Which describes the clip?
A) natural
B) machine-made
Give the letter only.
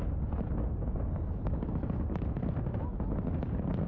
A